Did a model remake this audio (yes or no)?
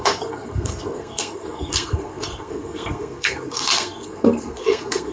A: yes